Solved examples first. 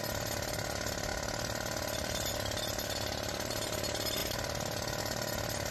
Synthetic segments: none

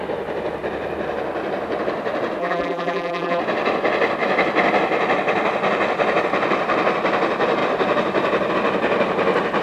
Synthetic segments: 2.4-3.4

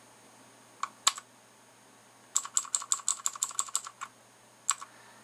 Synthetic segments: none

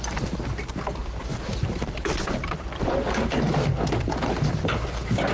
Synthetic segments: 1.3-3.0

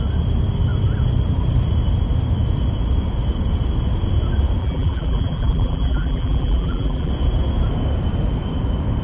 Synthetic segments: 4.6-7.1

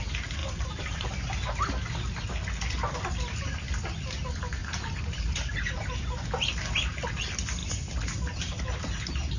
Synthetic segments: 0.4-1.1; 4.6-6.2